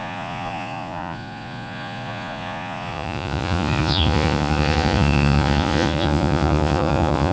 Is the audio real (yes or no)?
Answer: no